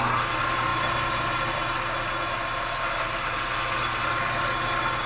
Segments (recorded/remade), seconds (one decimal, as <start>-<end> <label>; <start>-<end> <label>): 0.0-5.1 recorded

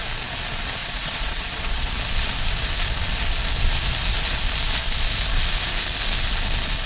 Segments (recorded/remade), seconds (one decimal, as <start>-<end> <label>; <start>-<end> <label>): 0.0-0.8 recorded; 0.8-1.9 remade; 1.9-6.9 recorded